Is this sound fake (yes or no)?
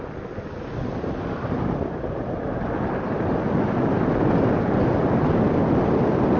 no